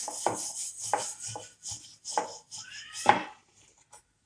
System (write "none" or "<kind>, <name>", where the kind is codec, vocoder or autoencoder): none